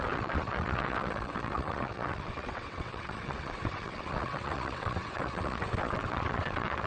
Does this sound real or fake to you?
fake